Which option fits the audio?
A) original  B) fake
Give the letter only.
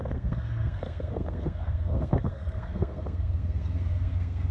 B